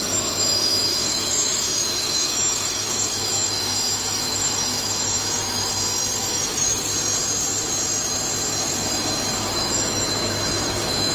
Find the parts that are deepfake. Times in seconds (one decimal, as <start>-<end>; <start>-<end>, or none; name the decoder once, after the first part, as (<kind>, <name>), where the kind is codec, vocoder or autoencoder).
0.0-5.7 (autoencoder, DAC-VAE); 6.2-6.9; 9.3-11.1